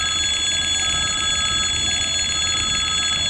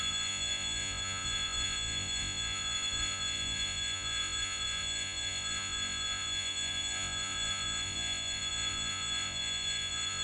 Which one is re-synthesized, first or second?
second